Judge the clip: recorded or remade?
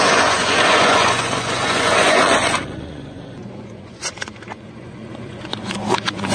remade